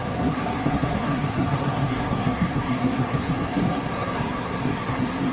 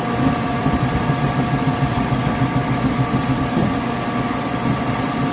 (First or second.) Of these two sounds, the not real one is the first